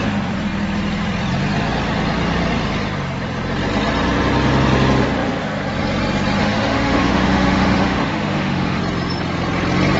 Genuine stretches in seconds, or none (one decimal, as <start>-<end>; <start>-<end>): 0.0-6.4; 8.8-10.0